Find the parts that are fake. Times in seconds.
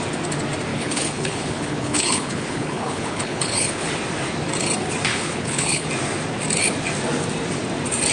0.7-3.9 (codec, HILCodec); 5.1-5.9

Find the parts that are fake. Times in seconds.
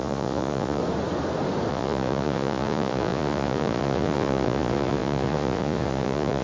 0.0-0.8 (vocoder, Vocos); 1.7-6.4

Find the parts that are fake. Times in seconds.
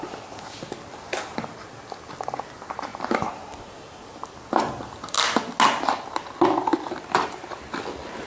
6.7-7.7 (vocoder, BigVGAN v2)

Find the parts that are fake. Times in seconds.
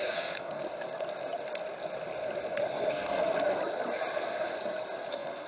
0.0-0.6 (codec, SNAC); 2.9-3.6; 5.1-5.5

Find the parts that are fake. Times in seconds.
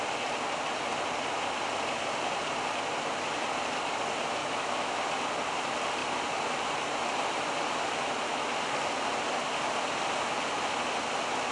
4.4-5.0 (autoencoder, DAC-VAE)